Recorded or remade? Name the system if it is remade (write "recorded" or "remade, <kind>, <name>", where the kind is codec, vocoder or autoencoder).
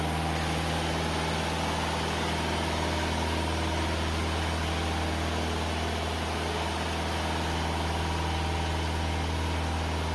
recorded